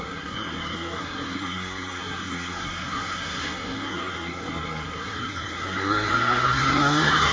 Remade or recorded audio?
remade